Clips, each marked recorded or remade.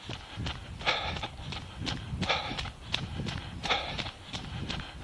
recorded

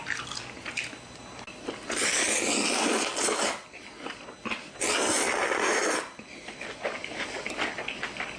recorded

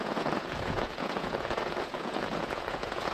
remade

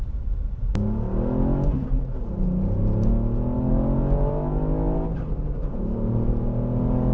recorded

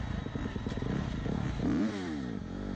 remade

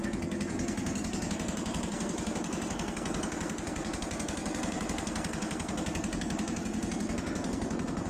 remade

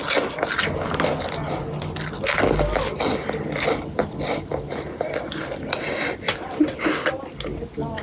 recorded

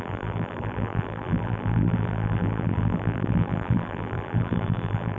remade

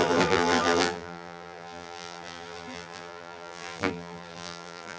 remade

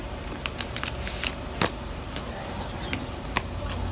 recorded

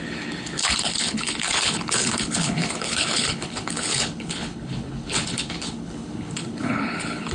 remade